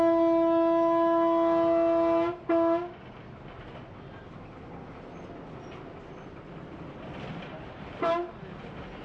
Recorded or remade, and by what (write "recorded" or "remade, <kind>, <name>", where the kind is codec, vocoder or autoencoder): recorded